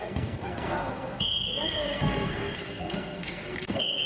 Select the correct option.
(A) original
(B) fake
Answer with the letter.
B